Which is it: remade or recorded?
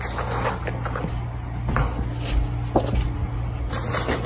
recorded